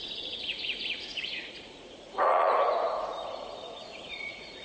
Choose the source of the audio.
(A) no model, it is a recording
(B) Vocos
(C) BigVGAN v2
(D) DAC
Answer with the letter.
B